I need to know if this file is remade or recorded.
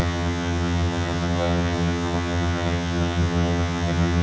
remade